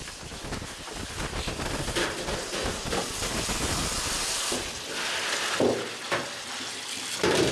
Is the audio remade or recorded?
recorded